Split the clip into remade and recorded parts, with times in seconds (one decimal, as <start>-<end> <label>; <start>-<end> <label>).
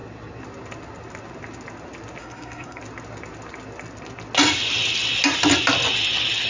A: 0.0-2.2 recorded; 2.2-2.8 remade; 2.8-6.5 recorded